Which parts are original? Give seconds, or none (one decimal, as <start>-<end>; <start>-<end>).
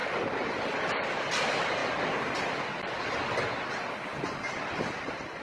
0.0-5.4